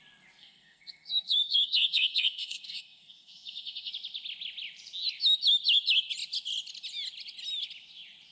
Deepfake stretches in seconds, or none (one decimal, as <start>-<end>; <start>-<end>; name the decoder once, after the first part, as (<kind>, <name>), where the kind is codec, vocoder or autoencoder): 0.4-3.9 (codec, SNAC)